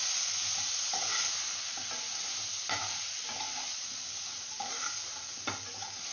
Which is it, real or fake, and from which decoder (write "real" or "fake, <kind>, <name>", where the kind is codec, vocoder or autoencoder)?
real